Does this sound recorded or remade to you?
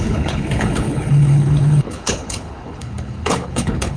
remade